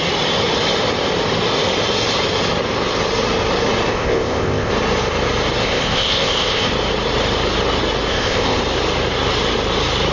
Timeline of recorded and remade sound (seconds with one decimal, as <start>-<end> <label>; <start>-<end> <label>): 0.0-3.9 recorded; 3.9-4.7 remade; 4.7-5.6 recorded; 5.6-6.7 remade; 6.7-8.1 recorded; 8.1-8.6 remade; 8.6-10.1 recorded